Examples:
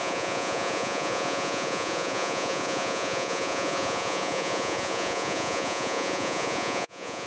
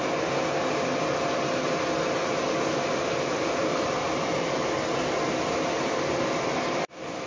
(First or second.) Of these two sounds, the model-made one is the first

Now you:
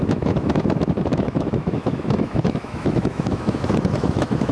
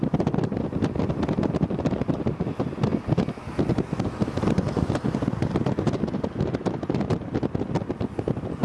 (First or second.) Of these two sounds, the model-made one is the first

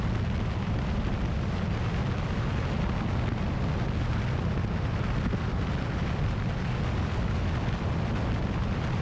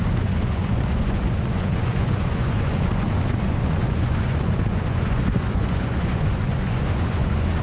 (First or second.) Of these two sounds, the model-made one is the second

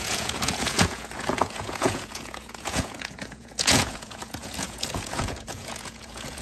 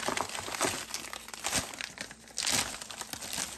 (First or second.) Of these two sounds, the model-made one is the first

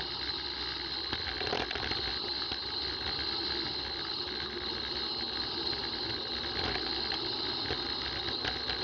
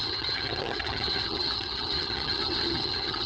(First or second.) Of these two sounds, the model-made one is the second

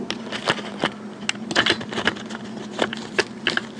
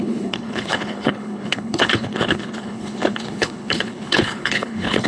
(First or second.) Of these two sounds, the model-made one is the second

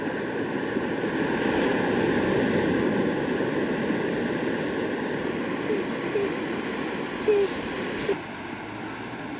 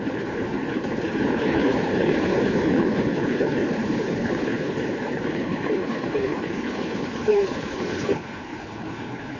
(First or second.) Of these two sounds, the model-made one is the second